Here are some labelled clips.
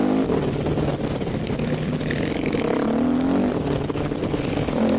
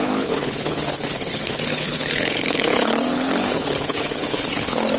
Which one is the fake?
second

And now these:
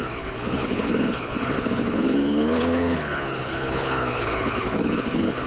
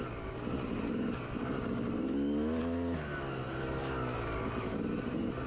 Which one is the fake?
first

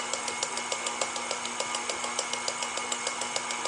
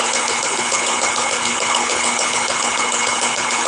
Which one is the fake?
second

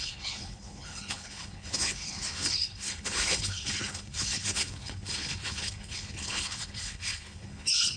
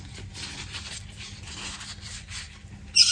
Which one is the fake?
first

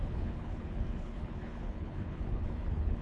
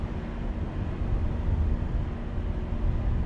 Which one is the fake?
first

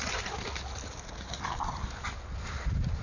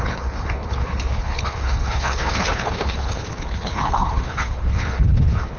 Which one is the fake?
second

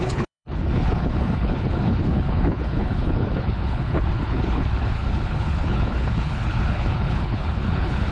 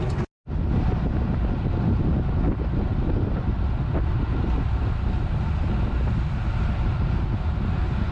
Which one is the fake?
first